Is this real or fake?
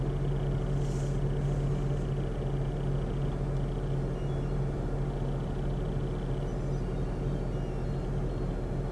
real